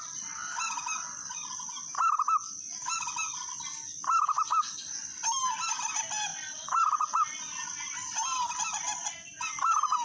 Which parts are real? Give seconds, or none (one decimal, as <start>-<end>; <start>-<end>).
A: 0.0-6.3; 7.4-10.0